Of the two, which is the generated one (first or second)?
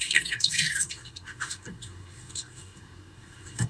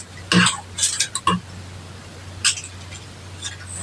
first